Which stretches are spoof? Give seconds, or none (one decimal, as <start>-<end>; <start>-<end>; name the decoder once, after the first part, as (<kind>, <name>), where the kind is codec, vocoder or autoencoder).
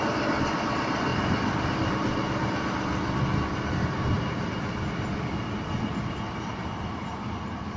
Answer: 6.0-7.3 (vocoder, BigVGAN v2)